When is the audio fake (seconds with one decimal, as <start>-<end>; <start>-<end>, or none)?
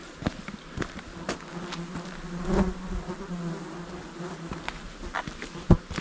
none